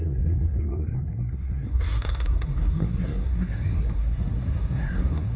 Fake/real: fake